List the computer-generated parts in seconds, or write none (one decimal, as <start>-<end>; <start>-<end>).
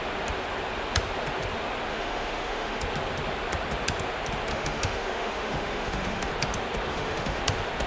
1.9-2.8; 4.5-6.3; 6.9-7.4